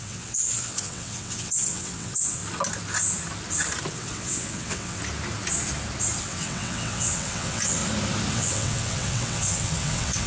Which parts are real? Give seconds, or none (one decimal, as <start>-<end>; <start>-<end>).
2.4-3.9; 5.0-6.2; 7.8-8.3